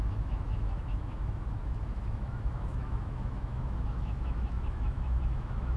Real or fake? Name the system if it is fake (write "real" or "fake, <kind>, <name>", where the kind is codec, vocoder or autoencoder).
fake, autoencoder, DAC-VAE